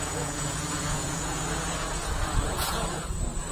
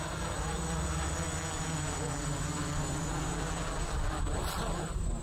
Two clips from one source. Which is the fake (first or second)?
first